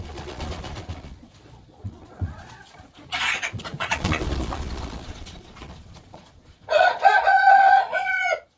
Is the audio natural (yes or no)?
no